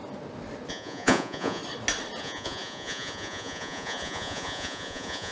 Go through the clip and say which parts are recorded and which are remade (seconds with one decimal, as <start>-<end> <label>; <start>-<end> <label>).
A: 0.0-0.7 recorded; 0.7-1.6 remade; 1.6-2.2 recorded; 2.2-5.3 remade

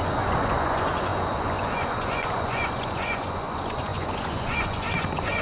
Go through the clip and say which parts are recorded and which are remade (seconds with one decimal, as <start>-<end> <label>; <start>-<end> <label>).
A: 0.0-5.4 remade

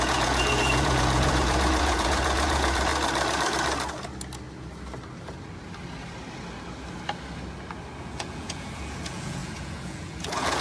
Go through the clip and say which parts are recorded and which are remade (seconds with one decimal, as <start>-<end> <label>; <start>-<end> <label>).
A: 0.0-2.9 remade; 2.9-8.0 recorded; 8.0-10.6 remade

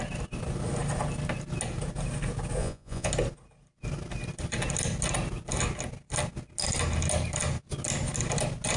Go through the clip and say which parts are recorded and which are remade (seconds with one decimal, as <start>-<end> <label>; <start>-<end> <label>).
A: 0.0-2.6 recorded; 2.6-3.1 remade; 3.1-8.8 recorded

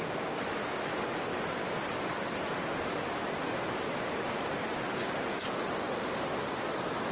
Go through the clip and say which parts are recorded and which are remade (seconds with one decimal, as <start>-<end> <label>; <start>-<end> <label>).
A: 0.0-7.1 recorded

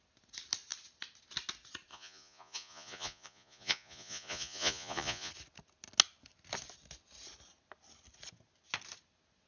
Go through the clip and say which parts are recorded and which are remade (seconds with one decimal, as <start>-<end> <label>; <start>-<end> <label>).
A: 0.0-1.9 recorded; 1.9-5.3 remade; 5.3-9.5 recorded

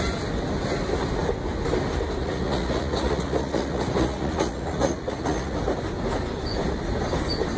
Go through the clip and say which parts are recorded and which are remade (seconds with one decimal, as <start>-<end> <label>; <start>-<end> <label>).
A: 0.0-2.2 recorded; 2.2-5.6 remade; 5.6-7.6 recorded